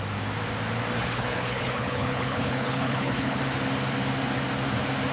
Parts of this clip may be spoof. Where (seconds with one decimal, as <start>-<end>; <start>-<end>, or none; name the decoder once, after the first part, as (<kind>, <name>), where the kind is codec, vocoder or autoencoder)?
1.0-3.4 (codec, HILCodec)